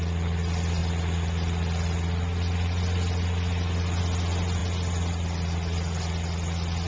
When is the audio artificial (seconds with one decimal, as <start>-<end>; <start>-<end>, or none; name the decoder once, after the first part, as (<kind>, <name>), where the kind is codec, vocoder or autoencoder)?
none